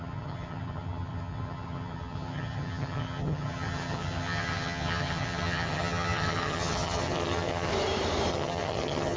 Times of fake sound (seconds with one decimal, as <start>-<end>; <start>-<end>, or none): 0.0-7.7; 8.3-9.2